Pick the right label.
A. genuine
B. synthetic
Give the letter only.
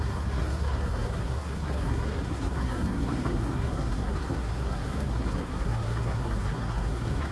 B